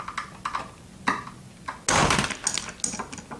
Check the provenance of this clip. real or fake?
real